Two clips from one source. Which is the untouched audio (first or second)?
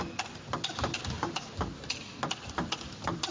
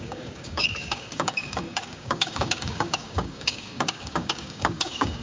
first